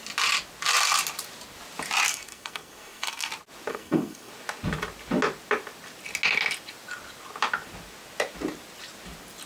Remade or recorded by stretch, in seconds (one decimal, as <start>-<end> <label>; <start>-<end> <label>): 0.0-2.1 recorded; 2.1-3.3 remade; 3.3-3.7 recorded; 3.7-4.3 remade; 4.3-9.5 recorded